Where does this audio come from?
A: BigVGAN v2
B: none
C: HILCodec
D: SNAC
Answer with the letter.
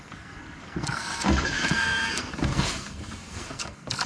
D